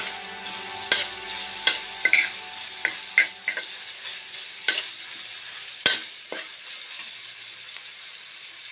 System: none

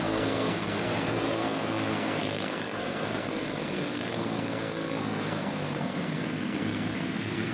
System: codec, SNAC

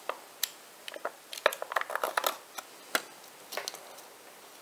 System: none